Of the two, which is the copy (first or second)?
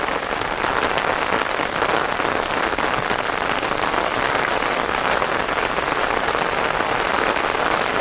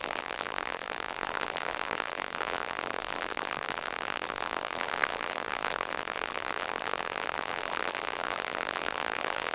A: second